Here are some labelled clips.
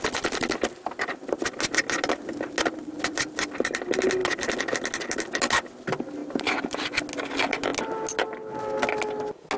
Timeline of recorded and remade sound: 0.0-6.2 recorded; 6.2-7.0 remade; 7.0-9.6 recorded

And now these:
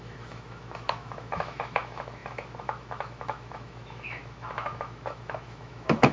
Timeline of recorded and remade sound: 0.0-6.1 remade

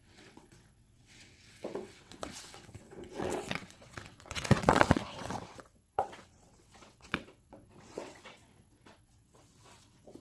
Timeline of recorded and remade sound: 0.0-10.2 remade

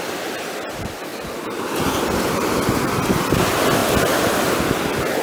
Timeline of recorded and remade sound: 0.0-5.2 recorded

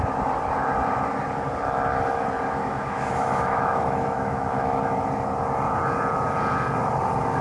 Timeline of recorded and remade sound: 0.0-2.6 recorded; 2.6-4.8 remade; 4.8-7.4 recorded

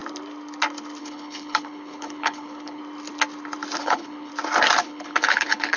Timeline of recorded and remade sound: 0.0-1.0 recorded; 1.0-2.8 remade; 2.8-3.8 recorded; 3.8-4.3 remade; 4.3-4.8 recorded; 4.8-5.8 remade

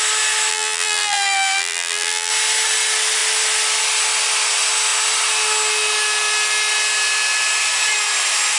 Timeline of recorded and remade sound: 0.0-0.5 recorded; 0.5-2.3 remade; 2.3-8.6 recorded

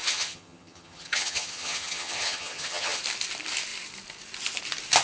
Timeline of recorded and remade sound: 0.0-3.0 remade; 3.0-5.0 recorded